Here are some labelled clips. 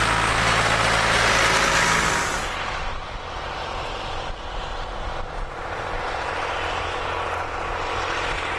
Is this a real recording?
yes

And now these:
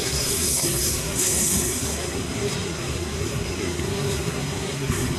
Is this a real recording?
no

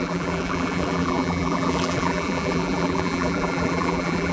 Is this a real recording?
no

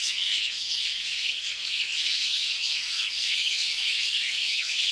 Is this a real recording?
no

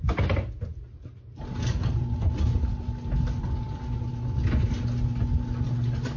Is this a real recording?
yes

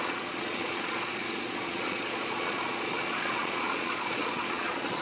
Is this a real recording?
no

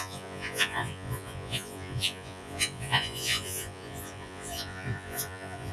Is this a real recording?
no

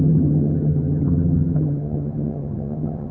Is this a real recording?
no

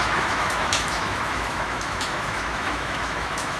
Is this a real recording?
no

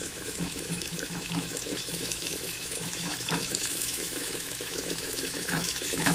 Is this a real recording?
no